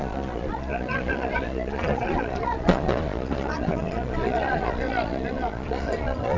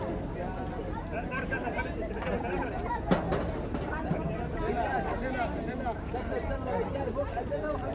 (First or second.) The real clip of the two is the second